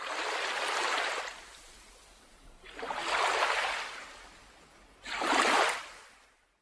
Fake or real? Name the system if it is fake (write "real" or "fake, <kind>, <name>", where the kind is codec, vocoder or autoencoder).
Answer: real